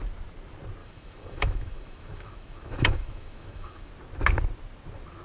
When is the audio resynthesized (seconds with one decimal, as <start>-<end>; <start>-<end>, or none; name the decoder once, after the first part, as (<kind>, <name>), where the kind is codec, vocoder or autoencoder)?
0.8-3.9 (autoencoder, DAC-VAE)